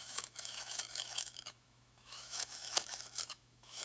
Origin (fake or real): fake